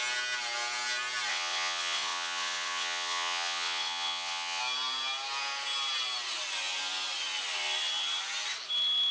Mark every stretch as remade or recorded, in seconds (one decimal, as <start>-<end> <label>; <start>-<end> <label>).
0.0-1.3 recorded; 1.3-4.6 remade; 4.6-9.1 recorded